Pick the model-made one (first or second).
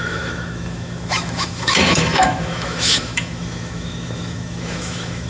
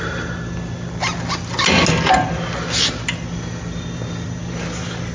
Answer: first